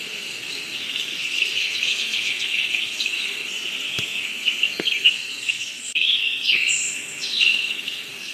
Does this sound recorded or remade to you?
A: remade